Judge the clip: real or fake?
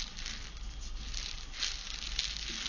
real